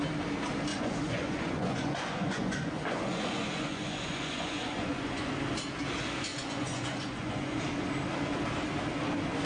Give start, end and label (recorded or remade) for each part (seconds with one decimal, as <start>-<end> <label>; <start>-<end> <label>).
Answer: 0.0-0.7 recorded; 0.7-5.3 remade; 5.3-6.3 recorded; 6.3-7.6 remade; 7.6-9.5 recorded